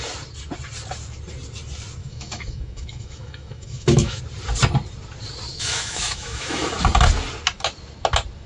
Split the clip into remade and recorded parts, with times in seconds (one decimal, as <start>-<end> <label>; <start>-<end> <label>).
0.0-2.0 recorded; 2.0-4.2 remade; 4.2-5.5 recorded; 5.5-6.7 remade; 6.7-8.5 recorded